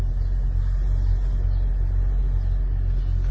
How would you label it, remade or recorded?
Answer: recorded